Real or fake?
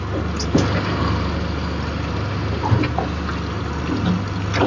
real